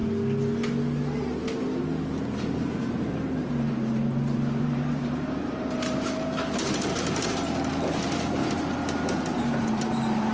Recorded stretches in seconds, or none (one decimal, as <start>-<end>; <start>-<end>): 0.0-2.5; 8.4-9.6